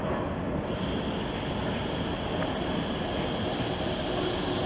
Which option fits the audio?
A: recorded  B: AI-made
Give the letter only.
A